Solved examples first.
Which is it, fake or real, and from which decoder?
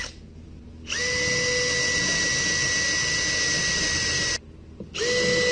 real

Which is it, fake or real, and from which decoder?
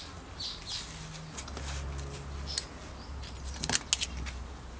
real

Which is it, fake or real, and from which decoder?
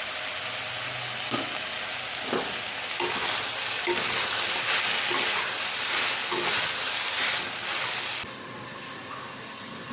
real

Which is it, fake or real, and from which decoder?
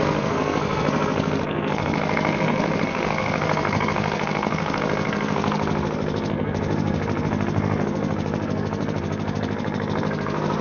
fake, codec, SNAC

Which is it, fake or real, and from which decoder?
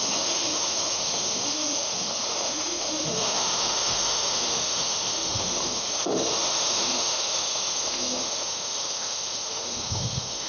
fake, autoencoder, DAC-VAE